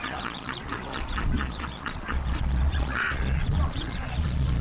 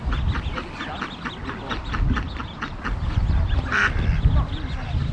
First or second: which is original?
second